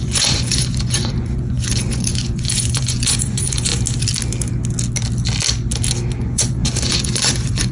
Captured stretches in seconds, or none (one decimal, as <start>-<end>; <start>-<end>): 3.7-6.2